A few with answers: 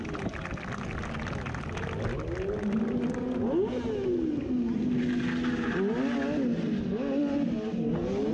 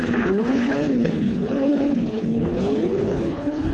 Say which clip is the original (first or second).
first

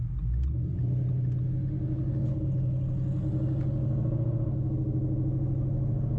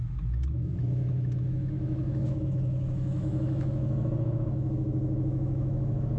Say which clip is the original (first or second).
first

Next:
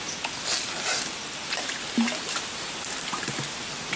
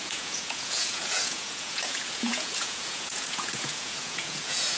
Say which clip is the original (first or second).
first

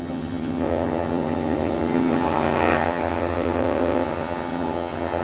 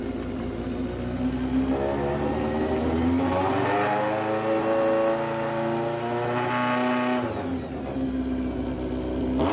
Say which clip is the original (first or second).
second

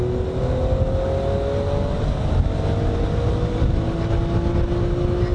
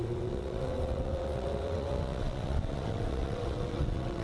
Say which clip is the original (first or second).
first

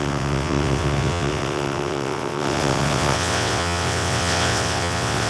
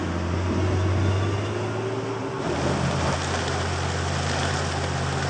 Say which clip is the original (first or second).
second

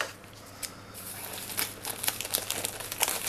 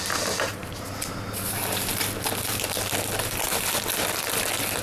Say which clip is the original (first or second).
first